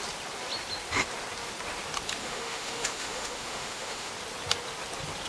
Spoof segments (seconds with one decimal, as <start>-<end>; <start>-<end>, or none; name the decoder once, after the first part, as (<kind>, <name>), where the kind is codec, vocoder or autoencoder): 2.2-4.1 (autoencoder, DAC-VAE)